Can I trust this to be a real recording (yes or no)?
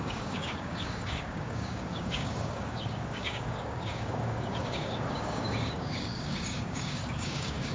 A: no